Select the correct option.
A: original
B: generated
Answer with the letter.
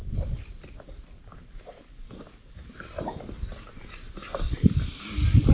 A